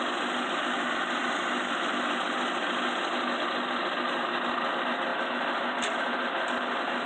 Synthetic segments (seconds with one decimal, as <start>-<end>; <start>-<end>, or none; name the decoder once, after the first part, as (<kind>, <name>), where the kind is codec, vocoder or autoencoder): none